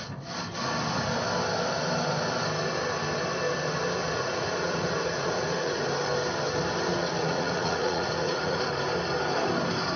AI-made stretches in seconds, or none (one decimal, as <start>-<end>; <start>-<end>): 4.0-5.8; 6.9-8.6